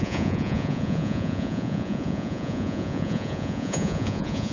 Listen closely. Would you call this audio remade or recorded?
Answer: remade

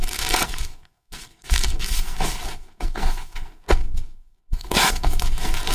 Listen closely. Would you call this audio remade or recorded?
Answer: remade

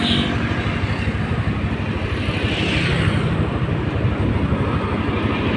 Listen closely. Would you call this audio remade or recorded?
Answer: recorded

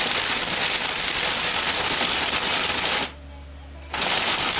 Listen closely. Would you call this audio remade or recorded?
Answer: recorded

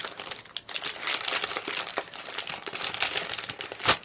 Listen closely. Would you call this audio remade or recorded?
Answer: recorded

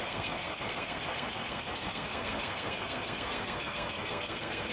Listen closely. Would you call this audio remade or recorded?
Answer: remade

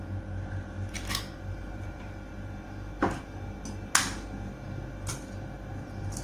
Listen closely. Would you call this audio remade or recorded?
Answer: recorded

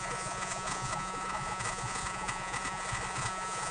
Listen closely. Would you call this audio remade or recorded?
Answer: remade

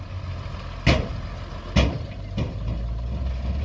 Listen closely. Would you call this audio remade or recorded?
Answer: recorded